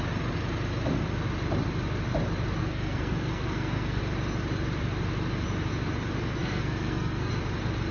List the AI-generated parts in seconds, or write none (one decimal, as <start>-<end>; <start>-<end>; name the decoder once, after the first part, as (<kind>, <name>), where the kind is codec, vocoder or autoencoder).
2.6-4.0 (codec, SNAC); 6.4-7.3